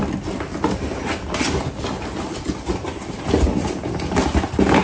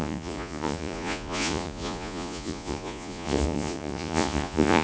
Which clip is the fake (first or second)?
second